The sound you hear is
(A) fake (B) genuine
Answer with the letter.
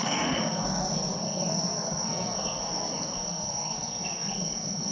A